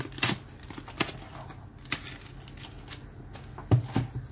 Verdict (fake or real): real